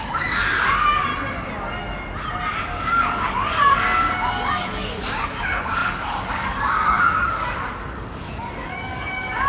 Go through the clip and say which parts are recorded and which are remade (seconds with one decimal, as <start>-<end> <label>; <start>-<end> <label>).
0.0-1.1 remade; 1.1-2.6 recorded; 2.6-9.5 remade